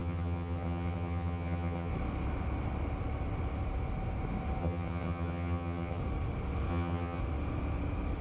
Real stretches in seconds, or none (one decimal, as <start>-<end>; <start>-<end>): 1.9-4.6; 6.0-6.7; 7.2-8.2